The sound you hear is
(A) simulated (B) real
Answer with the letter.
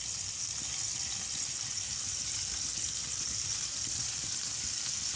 A